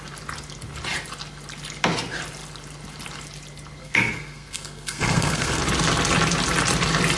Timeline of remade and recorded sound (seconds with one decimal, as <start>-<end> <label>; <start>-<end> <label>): 0.0-3.8 recorded; 3.8-5.6 remade; 5.6-7.2 recorded